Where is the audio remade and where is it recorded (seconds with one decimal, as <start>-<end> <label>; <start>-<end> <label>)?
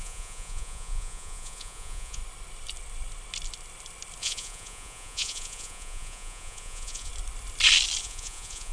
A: 0.0-2.2 remade; 2.2-4.2 recorded; 4.2-7.1 remade; 7.1-8.0 recorded; 8.0-8.7 remade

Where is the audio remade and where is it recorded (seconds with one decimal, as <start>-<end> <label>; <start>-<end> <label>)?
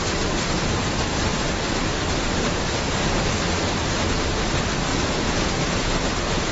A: 0.0-4.9 recorded; 4.9-5.9 remade; 5.9-6.5 recorded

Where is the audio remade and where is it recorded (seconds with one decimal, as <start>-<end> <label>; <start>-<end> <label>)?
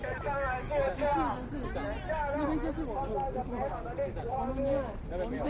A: 0.0-5.5 recorded